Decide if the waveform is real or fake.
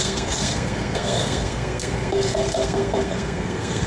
fake